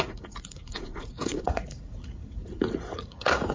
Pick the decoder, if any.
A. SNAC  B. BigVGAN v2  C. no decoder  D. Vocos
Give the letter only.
D